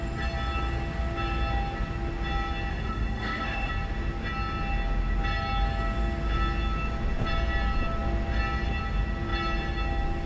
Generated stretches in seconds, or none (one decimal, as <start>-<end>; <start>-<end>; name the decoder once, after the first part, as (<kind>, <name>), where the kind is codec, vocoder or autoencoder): 2.7-3.7 (autoencoder, DAC-VAE)